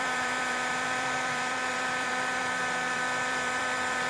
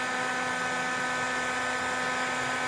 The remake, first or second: first